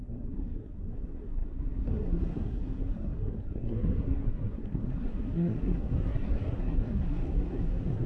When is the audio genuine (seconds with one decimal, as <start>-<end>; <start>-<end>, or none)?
none